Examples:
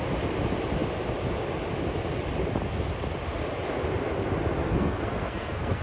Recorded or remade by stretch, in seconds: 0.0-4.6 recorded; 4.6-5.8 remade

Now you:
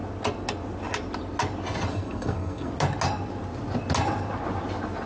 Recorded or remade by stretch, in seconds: 0.0-1.9 recorded; 1.9-2.7 remade; 2.7-5.1 recorded